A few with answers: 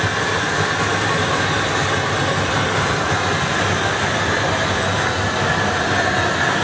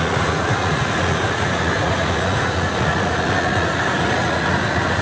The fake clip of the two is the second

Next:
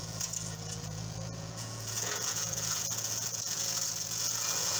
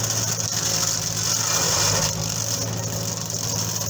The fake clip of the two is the first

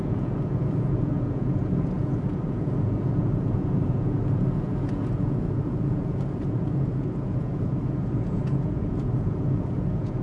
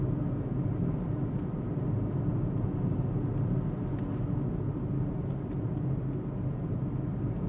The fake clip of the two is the first